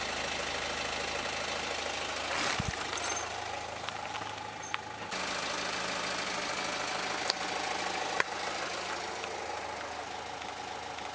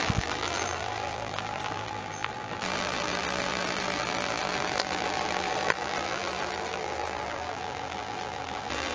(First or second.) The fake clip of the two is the second